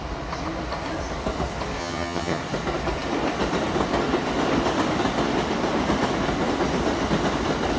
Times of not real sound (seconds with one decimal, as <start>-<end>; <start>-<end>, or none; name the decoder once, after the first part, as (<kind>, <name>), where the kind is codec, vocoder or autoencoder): 1.8-2.4 (vocoder, HiFi-GAN)